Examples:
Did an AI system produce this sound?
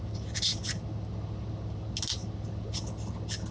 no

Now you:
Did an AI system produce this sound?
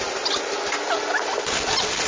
no